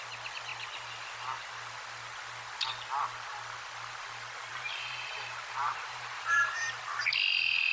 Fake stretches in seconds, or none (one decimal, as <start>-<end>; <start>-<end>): 4.5-6.8